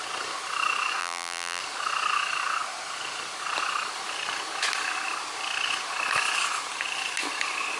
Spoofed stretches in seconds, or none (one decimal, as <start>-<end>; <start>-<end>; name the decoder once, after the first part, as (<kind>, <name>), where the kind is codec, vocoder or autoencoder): 1.0-1.6 (vocoder, BigVGAN v2)